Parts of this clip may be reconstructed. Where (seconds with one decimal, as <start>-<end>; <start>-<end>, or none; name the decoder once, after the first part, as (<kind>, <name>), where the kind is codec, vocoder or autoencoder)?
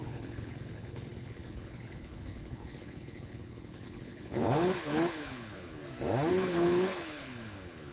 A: 0.0-5.8 (codec, HILCodec); 6.3-7.9